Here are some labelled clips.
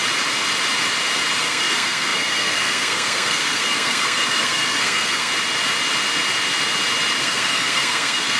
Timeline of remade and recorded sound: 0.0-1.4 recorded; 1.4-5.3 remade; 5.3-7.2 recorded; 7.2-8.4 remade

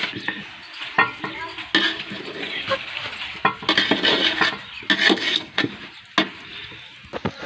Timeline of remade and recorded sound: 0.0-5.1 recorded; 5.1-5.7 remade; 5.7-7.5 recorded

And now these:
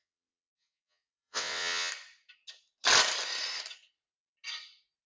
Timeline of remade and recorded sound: 0.0-1.9 remade; 1.9-5.1 recorded

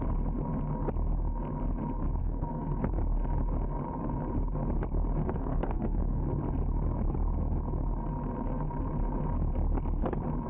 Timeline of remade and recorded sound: 0.0-2.2 recorded; 2.2-2.9 remade; 2.9-5.2 recorded; 5.2-6.4 remade; 6.4-10.5 recorded

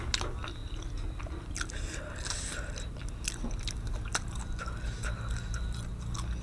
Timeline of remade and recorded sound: 0.0-6.4 recorded

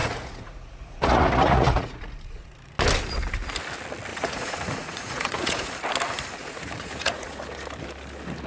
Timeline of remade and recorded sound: 0.0-2.7 remade; 2.7-4.1 recorded; 4.1-5.7 remade; 5.7-6.4 recorded; 6.4-7.4 remade; 7.4-8.5 recorded